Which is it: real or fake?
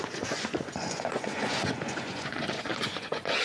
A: fake